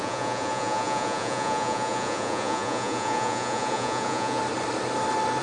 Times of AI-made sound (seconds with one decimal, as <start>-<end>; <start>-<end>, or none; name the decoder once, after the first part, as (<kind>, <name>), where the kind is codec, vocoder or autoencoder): 0.0-4.4 (vocoder, Vocos)